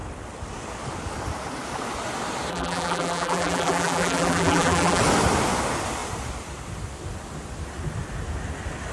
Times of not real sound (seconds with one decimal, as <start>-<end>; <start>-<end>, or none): 2.5-5.0